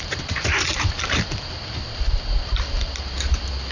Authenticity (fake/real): real